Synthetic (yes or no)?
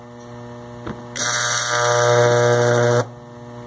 no